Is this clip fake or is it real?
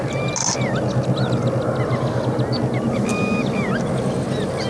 real